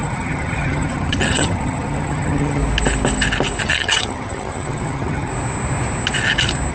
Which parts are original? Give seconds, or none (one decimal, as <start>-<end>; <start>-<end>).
2.6-3.6; 5.3-6.7